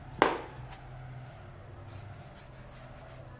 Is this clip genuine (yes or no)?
yes